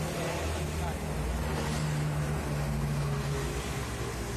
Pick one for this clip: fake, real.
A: real